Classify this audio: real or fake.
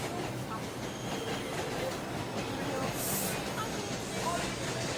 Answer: real